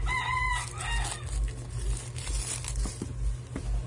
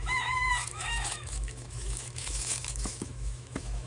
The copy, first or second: second